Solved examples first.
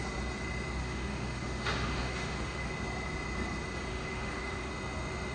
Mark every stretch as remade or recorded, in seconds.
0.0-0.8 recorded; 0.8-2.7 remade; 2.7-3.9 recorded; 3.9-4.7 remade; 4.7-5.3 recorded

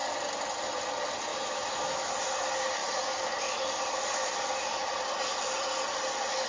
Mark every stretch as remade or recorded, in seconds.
0.0-1.3 recorded; 1.3-2.1 remade; 2.1-6.5 recorded

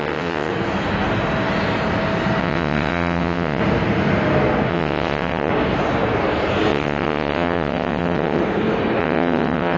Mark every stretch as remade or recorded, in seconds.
0.0-0.5 remade; 0.5-2.4 recorded; 2.4-3.6 remade; 3.6-4.7 recorded; 4.7-5.5 remade; 5.5-6.7 recorded; 6.7-8.4 remade; 8.4-9.0 recorded; 9.0-9.8 remade

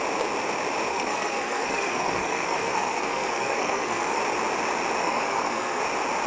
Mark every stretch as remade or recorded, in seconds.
0.0-0.9 recorded; 0.9-4.2 remade; 4.2-5.0 recorded; 5.0-5.8 remade; 5.8-6.3 recorded

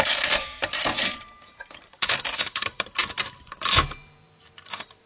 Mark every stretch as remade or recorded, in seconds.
0.0-5.1 remade

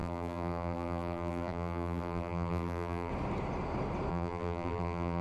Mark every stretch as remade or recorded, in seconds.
0.0-3.1 remade; 3.1-4.1 recorded; 4.1-5.2 remade

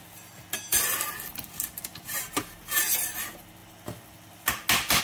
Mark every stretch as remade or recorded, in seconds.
0.0-0.7 recorded; 0.7-1.5 remade; 1.5-5.0 recorded

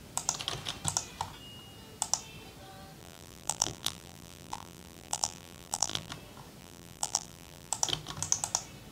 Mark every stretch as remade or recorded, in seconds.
0.0-3.0 recorded; 3.0-6.1 remade; 6.1-6.6 recorded; 6.6-7.7 remade; 7.7-8.9 recorded